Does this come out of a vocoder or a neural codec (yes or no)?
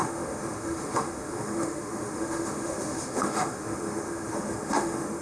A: yes